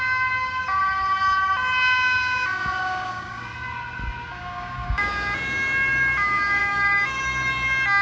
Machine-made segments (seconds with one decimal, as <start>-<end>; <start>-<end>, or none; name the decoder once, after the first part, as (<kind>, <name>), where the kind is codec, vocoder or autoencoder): 2.8-3.5 (codec, DAC); 4.3-5.0; 6.6-7.5